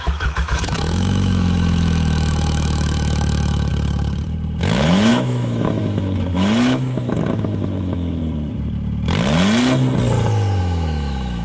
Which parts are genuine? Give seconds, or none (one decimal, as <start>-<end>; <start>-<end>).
3.7-4.6; 8.2-10.6

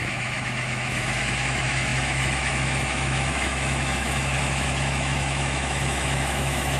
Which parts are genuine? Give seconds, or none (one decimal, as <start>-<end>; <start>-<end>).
none

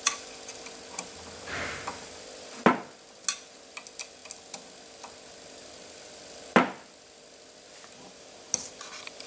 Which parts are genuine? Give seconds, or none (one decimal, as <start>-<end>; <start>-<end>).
0.0-9.3

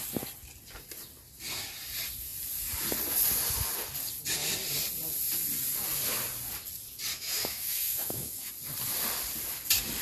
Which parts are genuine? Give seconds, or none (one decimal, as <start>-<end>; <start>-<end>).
0.0-7.1; 8.5-10.0

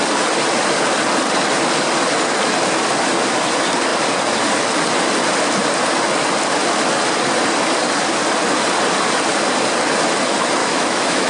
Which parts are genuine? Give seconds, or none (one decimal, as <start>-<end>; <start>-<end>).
0.0-10.6

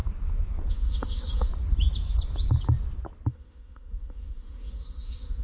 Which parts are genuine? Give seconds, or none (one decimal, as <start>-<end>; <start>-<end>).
0.0-0.7; 1.5-3.3

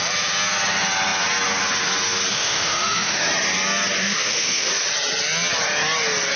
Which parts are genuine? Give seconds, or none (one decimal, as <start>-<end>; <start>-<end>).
0.0-2.3; 3.2-4.0; 4.7-6.4